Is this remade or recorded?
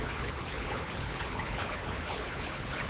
remade